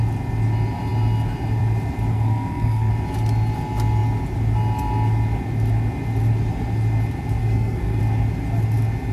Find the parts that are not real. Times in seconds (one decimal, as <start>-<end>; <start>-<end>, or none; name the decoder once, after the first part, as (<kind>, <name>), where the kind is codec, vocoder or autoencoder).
2.1-2.9 (codec, SNAC); 7.4-8.0